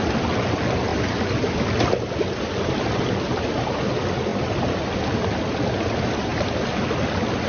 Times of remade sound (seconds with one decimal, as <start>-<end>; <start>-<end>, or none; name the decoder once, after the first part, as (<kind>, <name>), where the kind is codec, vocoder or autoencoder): none